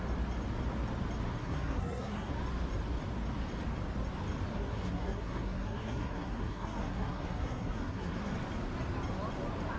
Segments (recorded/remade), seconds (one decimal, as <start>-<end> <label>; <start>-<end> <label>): 0.0-1.4 recorded; 1.4-2.3 remade; 2.3-4.5 recorded; 4.5-8.3 remade; 8.3-9.8 recorded